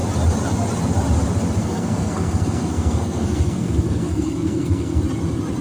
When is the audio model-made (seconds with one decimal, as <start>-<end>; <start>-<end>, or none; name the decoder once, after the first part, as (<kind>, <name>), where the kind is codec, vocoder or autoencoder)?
1.6-5.0 (codec, SNAC)